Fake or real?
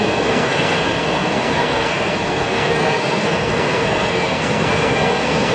fake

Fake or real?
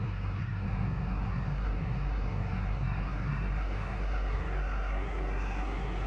fake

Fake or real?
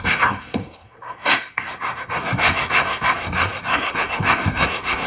fake